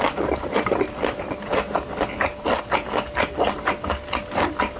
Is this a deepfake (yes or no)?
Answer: no